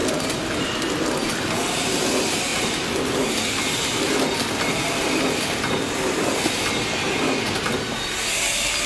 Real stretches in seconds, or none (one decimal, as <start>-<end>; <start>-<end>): 0.6-2.5; 7.2-8.9